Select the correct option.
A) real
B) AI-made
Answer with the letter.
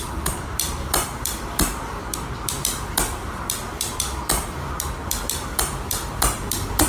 B